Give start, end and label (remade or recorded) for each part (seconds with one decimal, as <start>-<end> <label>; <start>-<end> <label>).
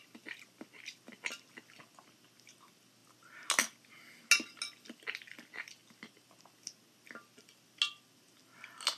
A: 0.0-9.0 recorded